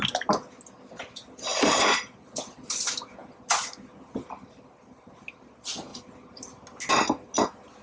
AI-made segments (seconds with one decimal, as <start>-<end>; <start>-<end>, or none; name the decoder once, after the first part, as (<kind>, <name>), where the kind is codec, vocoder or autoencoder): none